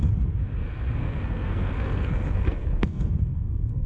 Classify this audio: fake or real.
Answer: fake